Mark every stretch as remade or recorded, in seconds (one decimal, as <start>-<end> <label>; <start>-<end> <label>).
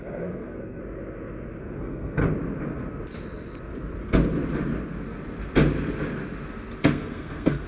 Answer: 0.0-0.8 remade; 0.8-1.6 recorded; 1.6-2.2 remade; 2.2-6.8 recorded; 6.8-7.7 remade